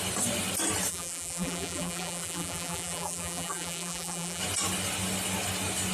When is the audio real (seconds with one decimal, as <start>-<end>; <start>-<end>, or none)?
0.0-0.9; 4.4-5.9